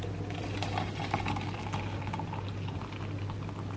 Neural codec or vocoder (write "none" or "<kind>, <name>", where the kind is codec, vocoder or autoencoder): none